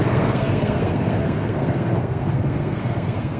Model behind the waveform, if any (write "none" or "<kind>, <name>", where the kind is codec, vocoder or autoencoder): codec, SNAC